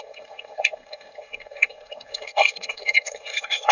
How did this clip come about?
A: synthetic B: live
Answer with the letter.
A